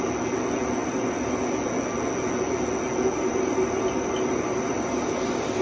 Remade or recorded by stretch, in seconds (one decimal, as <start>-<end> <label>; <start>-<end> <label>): 0.0-0.8 recorded; 0.8-1.4 remade; 1.4-3.1 recorded; 3.1-5.6 remade